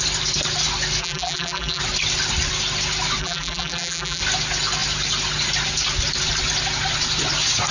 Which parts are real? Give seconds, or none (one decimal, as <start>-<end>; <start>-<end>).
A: 0.0-1.0; 1.8-3.2; 4.2-7.7